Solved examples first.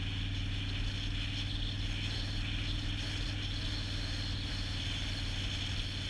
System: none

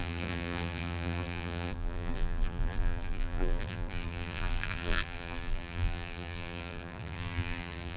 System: vocoder, BigVGAN v2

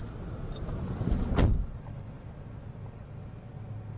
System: none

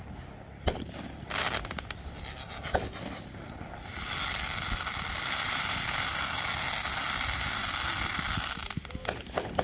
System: none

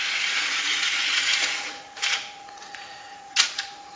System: vocoder, Vocos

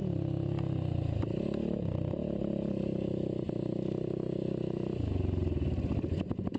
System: none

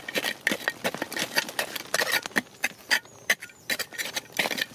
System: none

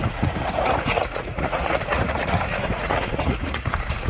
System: vocoder, Vocos